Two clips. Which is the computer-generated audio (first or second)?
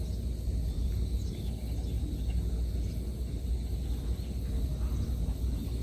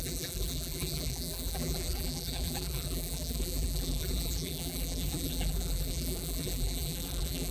second